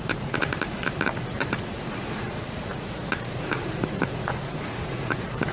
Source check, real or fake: fake